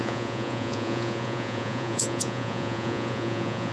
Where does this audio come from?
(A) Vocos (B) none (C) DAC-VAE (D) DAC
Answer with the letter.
A